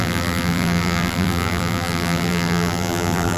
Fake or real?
fake